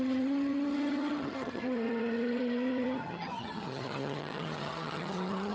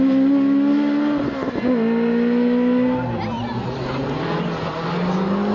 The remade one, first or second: first